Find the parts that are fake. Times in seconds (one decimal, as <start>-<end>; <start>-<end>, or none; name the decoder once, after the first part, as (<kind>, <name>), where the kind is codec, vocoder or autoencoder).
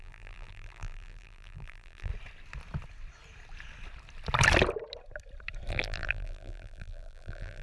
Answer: 0.0-2.1 (vocoder, BigVGAN v2); 5.7-7.6